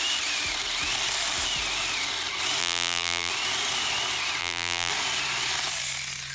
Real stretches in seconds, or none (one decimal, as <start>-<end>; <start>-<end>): 0.0-2.6; 3.3-4.4; 4.9-6.3